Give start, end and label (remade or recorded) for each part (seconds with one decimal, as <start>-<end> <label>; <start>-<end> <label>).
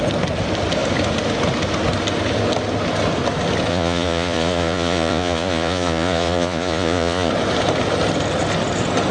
0.0-3.7 recorded; 3.7-7.3 remade; 7.3-9.1 recorded